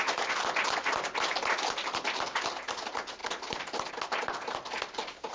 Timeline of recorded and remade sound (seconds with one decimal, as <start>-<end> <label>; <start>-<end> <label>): 0.0-5.3 recorded